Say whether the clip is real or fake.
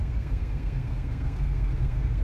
fake